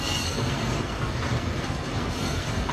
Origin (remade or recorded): remade